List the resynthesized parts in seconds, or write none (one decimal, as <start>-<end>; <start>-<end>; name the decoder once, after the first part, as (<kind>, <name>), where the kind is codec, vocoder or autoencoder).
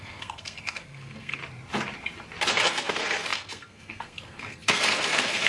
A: 0.0-1.4 (codec, SNAC); 2.5-5.5